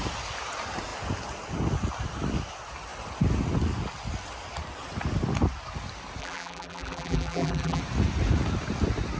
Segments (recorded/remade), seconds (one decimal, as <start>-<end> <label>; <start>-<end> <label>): 0.0-6.2 recorded; 6.2-7.8 remade; 7.8-9.2 recorded